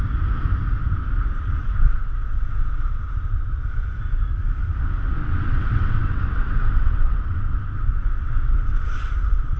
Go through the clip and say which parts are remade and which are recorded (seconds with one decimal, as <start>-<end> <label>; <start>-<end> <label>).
0.0-1.6 recorded; 1.6-3.1 remade; 3.1-5.2 recorded; 5.2-8.8 remade; 8.8-9.6 recorded